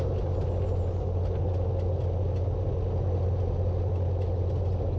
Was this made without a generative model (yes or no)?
yes